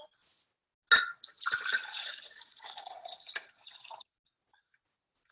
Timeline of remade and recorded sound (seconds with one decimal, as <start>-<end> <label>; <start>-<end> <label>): 0.0-1.8 recorded; 1.8-3.8 remade; 3.8-5.3 recorded

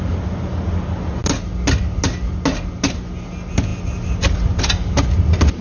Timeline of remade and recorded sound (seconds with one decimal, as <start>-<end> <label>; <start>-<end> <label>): 0.0-5.6 recorded

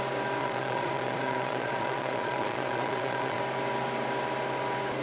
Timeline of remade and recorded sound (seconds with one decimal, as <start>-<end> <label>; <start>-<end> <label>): 0.0-0.4 recorded; 0.4-3.4 remade; 3.4-5.0 recorded

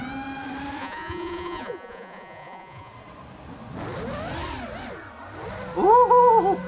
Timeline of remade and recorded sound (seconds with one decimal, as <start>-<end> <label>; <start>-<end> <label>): 0.0-0.8 recorded; 0.8-2.9 remade; 2.9-6.7 recorded

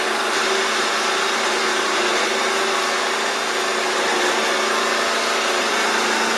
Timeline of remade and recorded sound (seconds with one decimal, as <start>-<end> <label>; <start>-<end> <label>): 0.0-6.4 recorded

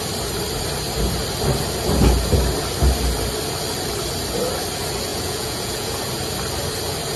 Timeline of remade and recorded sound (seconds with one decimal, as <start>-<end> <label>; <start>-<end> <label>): 0.0-5.1 recorded; 5.1-6.0 remade; 6.0-7.2 recorded

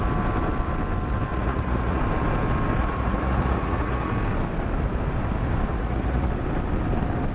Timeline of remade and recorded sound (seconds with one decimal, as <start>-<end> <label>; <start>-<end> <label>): 0.0-1.3 recorded; 1.3-2.0 remade; 2.0-2.8 recorded; 2.8-4.1 remade; 4.1-5.7 recorded; 5.7-6.3 remade; 6.3-7.3 recorded

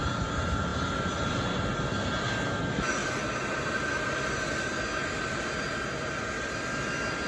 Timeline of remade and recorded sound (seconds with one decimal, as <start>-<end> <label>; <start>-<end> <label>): 0.0-7.3 recorded